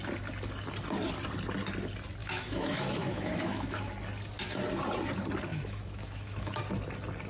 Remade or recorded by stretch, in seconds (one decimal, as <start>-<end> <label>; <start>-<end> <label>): 0.0-2.2 recorded; 2.2-3.9 remade; 3.9-5.5 recorded; 5.5-6.6 remade; 6.6-7.3 recorded